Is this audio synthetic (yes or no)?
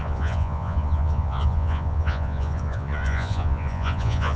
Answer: yes